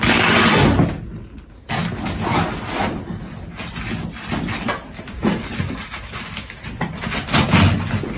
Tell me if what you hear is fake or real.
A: real